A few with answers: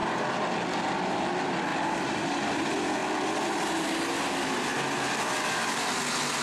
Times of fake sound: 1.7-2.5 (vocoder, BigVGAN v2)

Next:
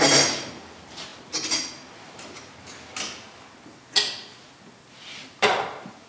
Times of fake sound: 0.0-1.1 (vocoder, BigVGAN v2); 4.8-6.1